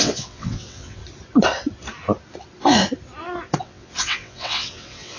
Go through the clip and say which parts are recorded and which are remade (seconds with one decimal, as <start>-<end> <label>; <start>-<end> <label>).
0.0-1.0 remade; 1.0-3.6 recorded; 3.6-5.2 remade

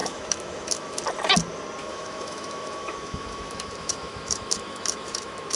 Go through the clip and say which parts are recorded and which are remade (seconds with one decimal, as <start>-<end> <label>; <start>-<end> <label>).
0.0-1.0 remade; 1.0-1.8 recorded; 1.8-5.6 remade